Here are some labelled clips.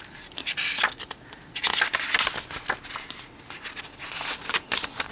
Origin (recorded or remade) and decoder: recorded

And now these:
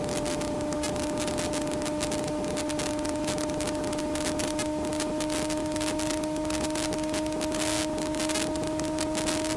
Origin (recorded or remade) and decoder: recorded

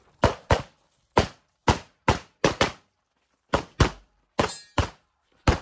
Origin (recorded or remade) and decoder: recorded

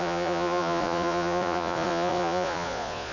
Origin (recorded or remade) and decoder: remade, vocoder, Vocos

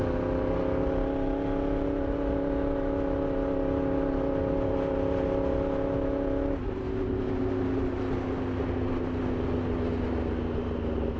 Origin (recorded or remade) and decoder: recorded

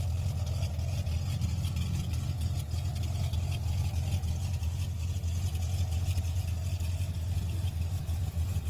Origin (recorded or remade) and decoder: recorded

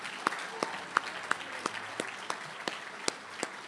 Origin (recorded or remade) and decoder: recorded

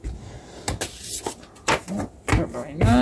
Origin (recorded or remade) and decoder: recorded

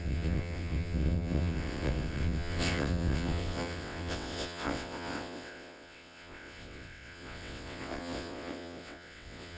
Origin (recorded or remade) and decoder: remade, vocoder, WaveNeXt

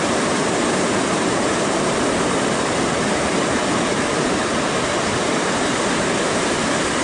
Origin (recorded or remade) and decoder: remade, vocoder, BigVGAN v2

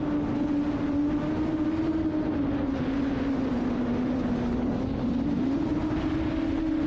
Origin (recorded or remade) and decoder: recorded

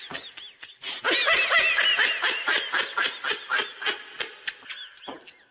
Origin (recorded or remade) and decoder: recorded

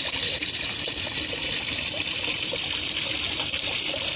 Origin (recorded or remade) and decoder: recorded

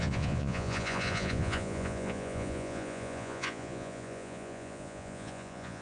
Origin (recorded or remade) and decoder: remade, vocoder, Vocos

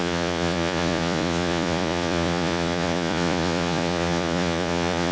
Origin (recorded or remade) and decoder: remade, vocoder, Vocos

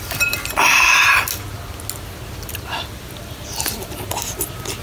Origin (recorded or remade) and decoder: recorded